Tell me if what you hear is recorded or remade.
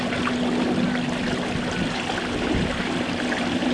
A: recorded